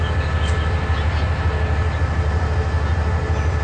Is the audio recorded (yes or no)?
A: yes